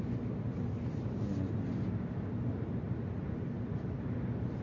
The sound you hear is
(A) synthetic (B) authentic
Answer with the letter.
B